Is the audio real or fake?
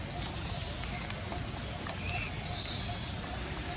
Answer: real